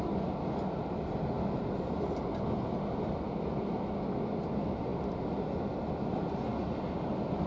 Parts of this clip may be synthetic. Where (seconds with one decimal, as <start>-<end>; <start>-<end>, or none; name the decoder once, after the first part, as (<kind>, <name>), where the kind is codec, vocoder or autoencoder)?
none

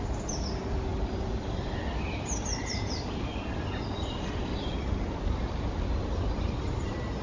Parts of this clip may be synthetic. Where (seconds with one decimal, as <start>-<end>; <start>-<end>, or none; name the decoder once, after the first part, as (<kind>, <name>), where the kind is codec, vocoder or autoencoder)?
none

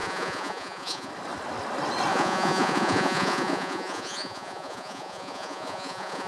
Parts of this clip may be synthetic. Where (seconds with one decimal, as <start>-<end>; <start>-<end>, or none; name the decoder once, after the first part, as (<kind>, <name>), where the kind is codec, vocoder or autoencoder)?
0.0-1.1 (vocoder, Vocos); 2.1-6.3

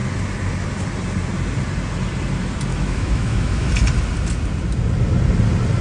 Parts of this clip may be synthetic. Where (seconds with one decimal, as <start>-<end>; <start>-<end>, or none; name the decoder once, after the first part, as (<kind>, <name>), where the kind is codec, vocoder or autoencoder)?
2.7-3.7 (autoencoder, DAC-VAE)

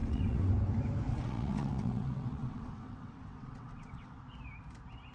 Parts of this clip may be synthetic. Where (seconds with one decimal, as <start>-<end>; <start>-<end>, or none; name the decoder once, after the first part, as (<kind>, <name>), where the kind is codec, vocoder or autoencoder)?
0.0-0.5 (vocoder, WaveNeXt); 1.1-4.2